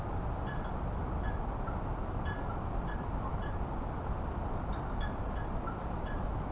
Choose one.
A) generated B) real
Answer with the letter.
B